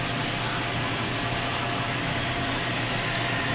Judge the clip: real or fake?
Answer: real